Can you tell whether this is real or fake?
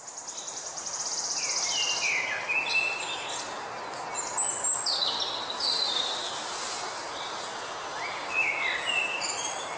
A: real